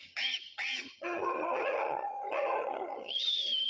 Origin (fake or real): fake